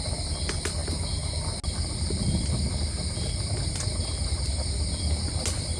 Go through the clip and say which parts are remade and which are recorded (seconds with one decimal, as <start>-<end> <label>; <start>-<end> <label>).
0.0-5.8 recorded